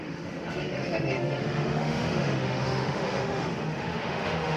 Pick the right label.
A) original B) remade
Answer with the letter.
B